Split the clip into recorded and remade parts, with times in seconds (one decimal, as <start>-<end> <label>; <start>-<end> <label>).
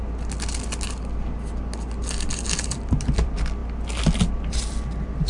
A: 0.0-5.3 recorded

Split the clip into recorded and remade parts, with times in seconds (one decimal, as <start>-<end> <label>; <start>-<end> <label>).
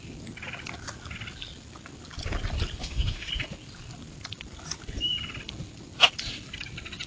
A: 0.0-2.8 recorded; 2.8-3.3 remade; 3.3-7.1 recorded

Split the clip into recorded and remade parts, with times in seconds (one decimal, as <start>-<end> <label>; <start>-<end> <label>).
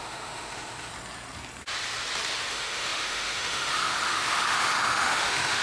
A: 0.0-0.9 remade; 0.9-2.5 recorded; 2.5-5.6 remade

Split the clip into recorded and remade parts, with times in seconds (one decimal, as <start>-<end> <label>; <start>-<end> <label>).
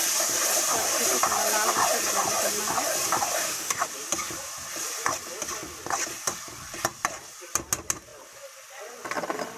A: 0.0-3.4 recorded; 3.4-3.9 remade; 3.9-9.6 recorded